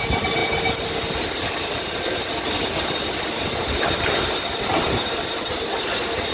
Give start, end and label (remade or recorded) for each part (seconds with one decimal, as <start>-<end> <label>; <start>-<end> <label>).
0.0-6.3 recorded